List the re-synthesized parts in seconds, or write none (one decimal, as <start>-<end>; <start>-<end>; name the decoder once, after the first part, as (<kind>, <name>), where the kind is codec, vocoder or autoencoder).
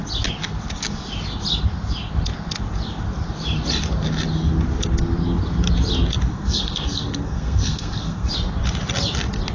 6.3-8.3 (codec, SNAC)